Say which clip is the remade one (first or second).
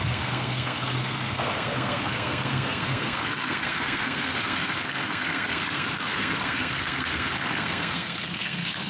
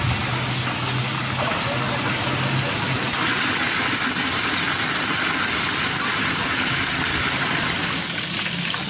first